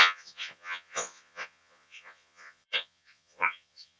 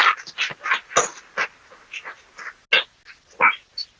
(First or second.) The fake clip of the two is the first